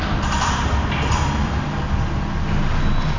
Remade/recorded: recorded